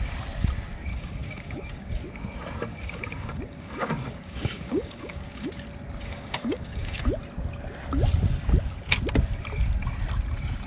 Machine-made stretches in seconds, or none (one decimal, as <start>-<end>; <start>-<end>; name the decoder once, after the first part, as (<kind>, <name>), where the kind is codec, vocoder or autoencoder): 0.9-2.0 (codec, DAC); 2.7-5.5; 6.0-7.1